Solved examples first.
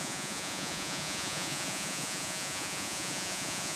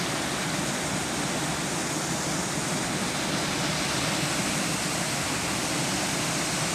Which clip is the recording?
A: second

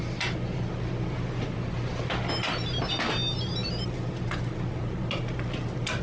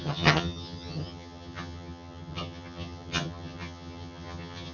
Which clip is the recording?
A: first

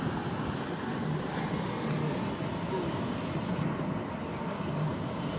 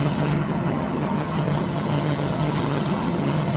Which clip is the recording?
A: first